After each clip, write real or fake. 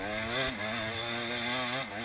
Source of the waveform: real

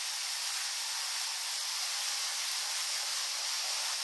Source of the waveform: real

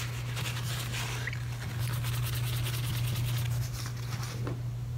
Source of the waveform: real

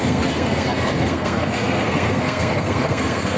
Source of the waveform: fake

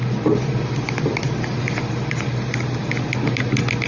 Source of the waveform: real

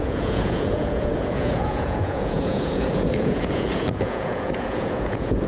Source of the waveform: fake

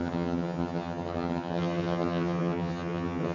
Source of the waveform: fake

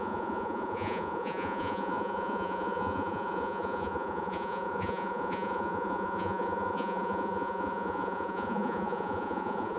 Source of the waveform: fake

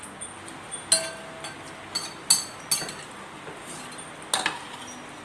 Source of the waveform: real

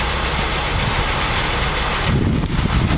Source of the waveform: real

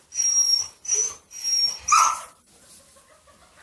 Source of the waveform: real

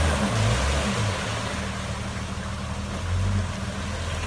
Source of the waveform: real